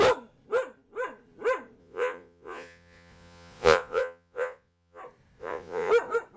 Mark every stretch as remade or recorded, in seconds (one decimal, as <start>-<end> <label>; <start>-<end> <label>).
0.0-1.8 recorded; 1.8-5.0 remade; 5.0-5.4 recorded; 5.4-5.9 remade; 5.9-6.4 recorded